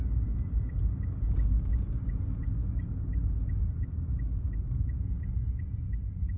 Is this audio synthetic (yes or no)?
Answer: no